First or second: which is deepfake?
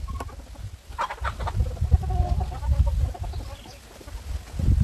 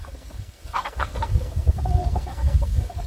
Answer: second